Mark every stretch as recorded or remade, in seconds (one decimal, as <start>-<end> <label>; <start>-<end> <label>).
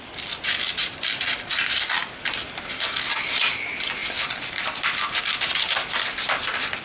0.0-6.8 recorded